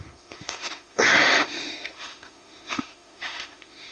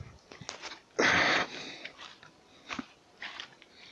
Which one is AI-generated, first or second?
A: first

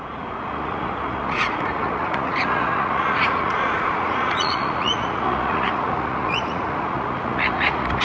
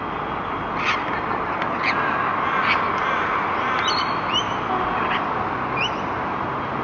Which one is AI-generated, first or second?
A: first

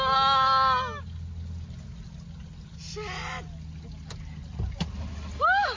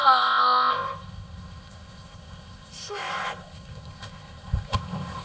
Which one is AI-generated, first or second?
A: second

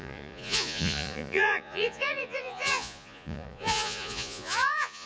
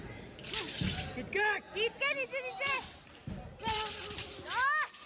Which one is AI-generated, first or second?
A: first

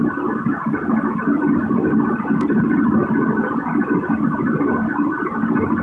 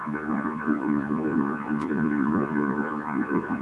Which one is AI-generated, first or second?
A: second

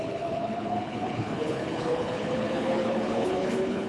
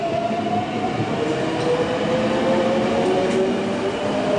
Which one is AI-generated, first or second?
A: first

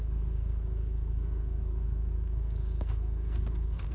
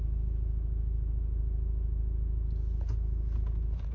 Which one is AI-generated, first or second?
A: first